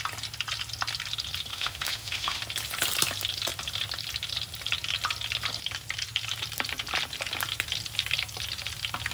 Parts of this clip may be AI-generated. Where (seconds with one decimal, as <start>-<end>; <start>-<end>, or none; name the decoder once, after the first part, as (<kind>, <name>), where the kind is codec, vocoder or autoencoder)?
1.5-2.4 (autoencoder, DAC-VAE)